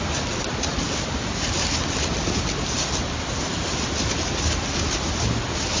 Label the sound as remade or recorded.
recorded